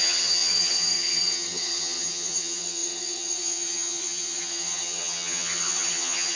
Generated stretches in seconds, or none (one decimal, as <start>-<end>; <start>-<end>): 0.0-6.4